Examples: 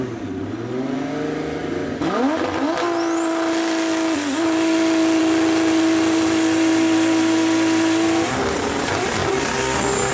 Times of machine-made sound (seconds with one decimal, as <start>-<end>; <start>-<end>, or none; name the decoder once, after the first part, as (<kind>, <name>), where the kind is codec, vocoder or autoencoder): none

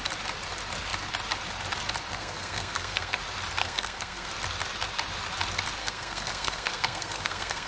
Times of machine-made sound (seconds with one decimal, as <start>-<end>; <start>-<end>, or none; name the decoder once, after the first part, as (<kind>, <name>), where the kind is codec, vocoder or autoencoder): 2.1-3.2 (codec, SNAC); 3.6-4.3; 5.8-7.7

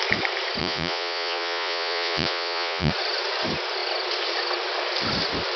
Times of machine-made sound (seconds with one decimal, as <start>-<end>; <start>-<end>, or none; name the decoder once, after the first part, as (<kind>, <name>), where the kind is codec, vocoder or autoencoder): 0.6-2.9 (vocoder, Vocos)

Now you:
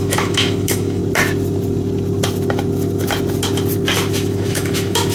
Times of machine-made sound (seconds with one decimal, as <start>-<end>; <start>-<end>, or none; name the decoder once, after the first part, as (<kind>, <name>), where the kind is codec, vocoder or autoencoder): 0.0-1.0 (autoencoder, DAC-VAE); 4.1-5.1

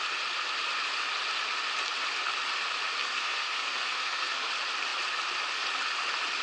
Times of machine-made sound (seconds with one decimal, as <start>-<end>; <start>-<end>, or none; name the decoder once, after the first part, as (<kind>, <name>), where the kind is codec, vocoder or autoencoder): 3.0-4.5 (codec, SNAC)

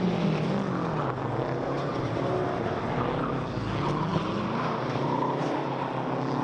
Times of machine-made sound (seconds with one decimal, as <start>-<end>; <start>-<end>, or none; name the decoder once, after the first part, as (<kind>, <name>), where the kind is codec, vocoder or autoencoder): none